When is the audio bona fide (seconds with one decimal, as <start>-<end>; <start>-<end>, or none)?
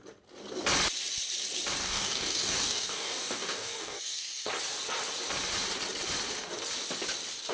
0.0-1.8; 4.5-7.5